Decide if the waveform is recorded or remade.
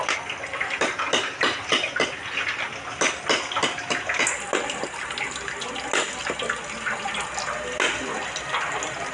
recorded